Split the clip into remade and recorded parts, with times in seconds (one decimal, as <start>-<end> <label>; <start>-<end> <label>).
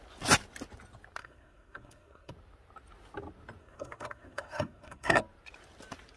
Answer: 0.0-1.2 recorded; 1.2-2.3 remade; 2.3-3.6 recorded; 3.6-5.2 remade; 5.2-6.2 recorded